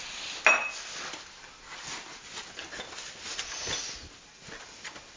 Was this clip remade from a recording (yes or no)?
no